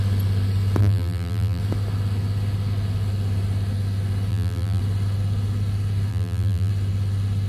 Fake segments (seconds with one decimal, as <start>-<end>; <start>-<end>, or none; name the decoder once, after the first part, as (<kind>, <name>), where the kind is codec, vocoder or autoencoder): 0.8-1.6 (vocoder, BigVGAN v2); 4.3-4.8; 6.1-6.7